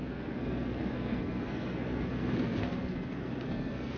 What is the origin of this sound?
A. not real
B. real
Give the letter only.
A